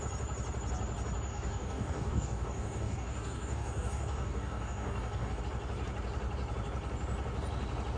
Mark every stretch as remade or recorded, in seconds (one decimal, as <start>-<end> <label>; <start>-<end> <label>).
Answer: 0.0-1.3 recorded; 1.3-5.4 remade; 5.4-8.0 recorded